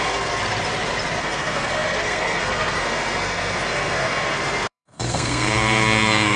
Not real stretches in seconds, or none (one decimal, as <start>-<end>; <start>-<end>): 0.0-0.4; 1.2-6.4